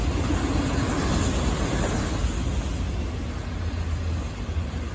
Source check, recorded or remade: recorded